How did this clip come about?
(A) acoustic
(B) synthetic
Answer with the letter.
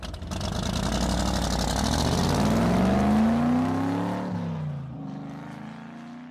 A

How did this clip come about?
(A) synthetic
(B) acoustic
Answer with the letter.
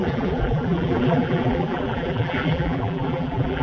A